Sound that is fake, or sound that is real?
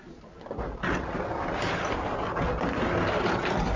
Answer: real